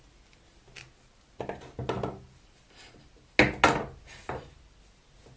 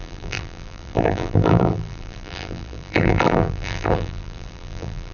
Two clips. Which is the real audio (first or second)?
first